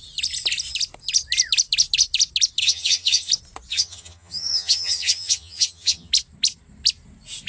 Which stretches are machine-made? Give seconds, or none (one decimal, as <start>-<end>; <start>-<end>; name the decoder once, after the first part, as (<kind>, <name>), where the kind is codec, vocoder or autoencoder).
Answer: 2.6-3.3 (vocoder, HiFi-GAN); 3.7-6.1